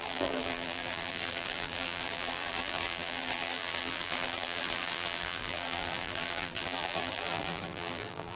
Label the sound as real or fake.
fake